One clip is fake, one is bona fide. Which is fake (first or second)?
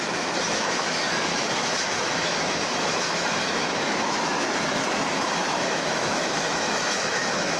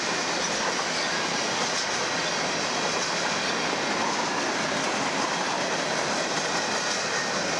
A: first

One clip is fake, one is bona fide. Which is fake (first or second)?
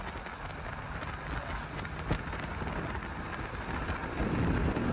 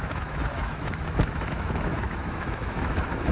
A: second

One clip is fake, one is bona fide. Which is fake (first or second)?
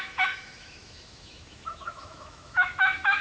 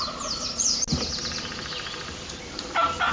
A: first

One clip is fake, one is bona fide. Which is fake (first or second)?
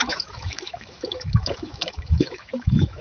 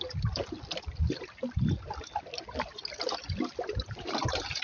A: first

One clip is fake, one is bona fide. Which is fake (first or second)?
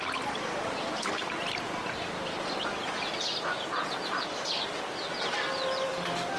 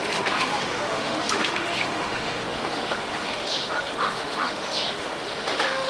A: second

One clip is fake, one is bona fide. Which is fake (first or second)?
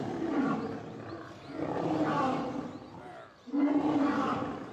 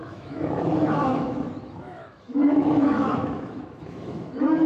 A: second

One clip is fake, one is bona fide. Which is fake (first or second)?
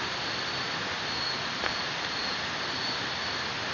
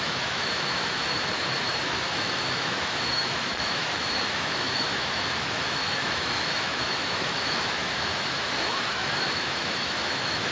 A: second